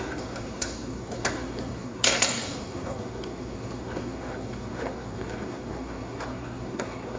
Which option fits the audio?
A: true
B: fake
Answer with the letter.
B